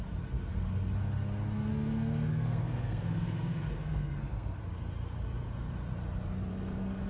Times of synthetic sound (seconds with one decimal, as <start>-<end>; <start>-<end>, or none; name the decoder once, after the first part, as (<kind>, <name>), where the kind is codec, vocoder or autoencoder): 1.7-4.6 (codec, SNAC); 6.5-7.1